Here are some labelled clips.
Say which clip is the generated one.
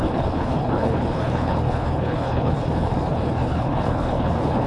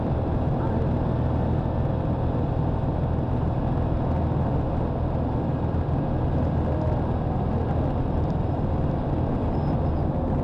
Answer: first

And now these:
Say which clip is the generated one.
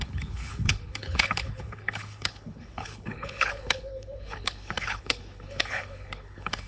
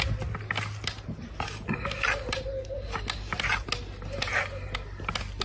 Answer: first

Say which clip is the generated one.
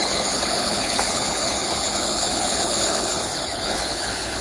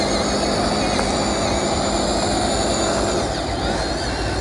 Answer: first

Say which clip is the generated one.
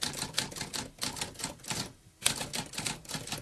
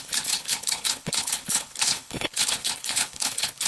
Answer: second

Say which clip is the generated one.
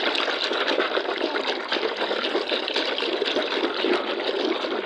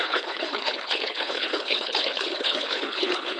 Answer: second